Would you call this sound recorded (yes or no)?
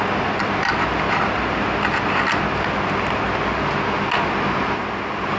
yes